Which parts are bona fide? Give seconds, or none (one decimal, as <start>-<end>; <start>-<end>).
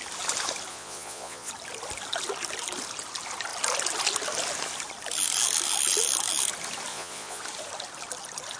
0.0-0.7; 1.5-6.9; 7.4-8.6